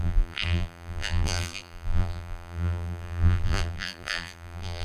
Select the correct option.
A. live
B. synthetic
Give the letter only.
B